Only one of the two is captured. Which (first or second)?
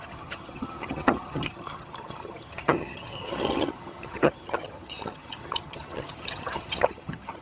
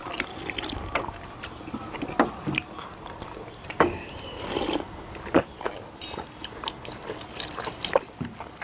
second